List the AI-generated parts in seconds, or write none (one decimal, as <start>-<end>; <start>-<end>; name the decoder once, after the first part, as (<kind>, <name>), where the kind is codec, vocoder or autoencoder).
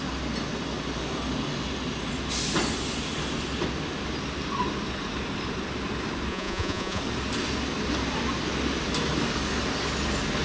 6.3-7.0 (vocoder, Vocos)